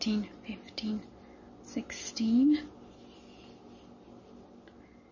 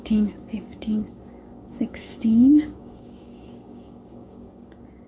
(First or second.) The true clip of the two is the first